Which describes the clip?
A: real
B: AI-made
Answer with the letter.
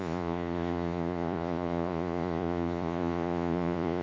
B